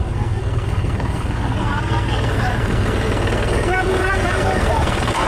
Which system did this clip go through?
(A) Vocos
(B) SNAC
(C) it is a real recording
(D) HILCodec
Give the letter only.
B